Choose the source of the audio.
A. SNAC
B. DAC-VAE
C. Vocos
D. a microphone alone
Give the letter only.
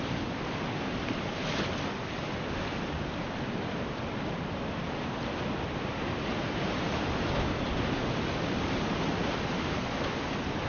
D